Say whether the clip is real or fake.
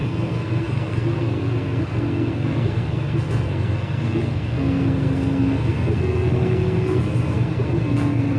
fake